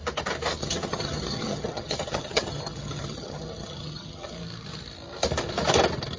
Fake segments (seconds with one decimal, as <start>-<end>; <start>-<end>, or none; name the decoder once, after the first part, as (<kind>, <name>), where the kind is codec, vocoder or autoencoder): 0.6-4.3 (vocoder, HiFi-GAN)

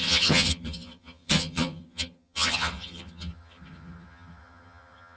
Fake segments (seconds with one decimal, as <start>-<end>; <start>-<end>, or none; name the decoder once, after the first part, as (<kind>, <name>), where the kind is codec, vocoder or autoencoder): 0.0-5.2 (vocoder, HiFi-GAN)

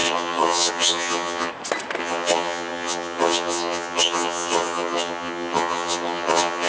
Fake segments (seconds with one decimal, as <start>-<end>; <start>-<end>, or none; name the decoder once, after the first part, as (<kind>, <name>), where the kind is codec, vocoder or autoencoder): 0.0-1.5 (vocoder, HiFi-GAN); 2.0-6.7

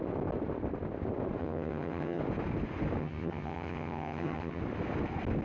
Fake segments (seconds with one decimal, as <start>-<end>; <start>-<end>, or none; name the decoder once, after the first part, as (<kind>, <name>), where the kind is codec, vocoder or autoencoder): 1.4-2.2 (vocoder, HiFi-GAN); 3.0-4.6